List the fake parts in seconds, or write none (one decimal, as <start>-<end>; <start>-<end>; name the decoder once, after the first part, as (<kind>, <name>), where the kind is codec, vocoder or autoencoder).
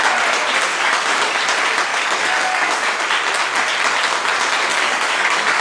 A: 0.7-1.4 (codec, DAC); 1.9-3.0; 4.7-5.6